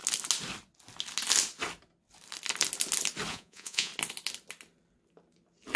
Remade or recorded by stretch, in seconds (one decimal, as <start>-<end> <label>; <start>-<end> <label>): 0.0-3.3 recorded; 3.3-3.9 remade; 3.9-5.8 recorded